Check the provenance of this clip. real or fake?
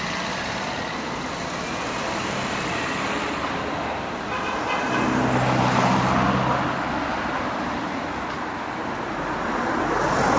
real